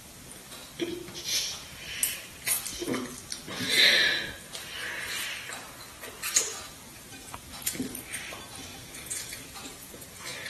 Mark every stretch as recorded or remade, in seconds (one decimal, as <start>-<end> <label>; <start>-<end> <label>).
0.0-6.5 recorded; 6.5-7.6 remade; 7.6-8.7 recorded; 8.7-10.5 remade